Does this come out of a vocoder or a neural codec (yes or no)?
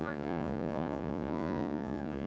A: yes